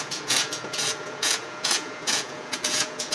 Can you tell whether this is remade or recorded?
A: remade